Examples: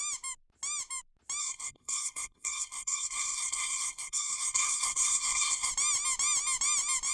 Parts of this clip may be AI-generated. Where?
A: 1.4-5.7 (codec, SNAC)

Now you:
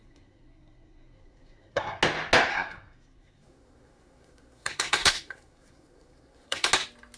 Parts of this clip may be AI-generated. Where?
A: 0.0-2.0 (codec, SNAC); 2.5-6.7

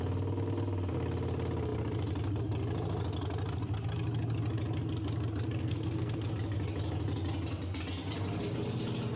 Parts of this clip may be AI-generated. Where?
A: 5.6-6.3 (codec, SNAC)

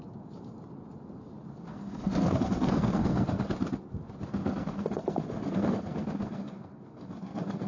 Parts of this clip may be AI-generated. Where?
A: 1.7-3.4 (codec, SNAC); 4.3-7.7

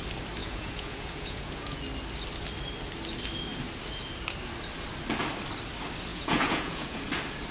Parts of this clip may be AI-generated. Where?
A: 0.4-1.8 (vocoder, Vocos); 6.1-7.1

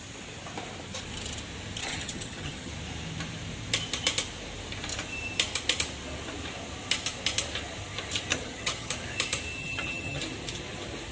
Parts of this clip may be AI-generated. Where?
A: 1.8-2.7 (vocoder, HiFi-GAN); 8.3-8.9; 9.6-10.2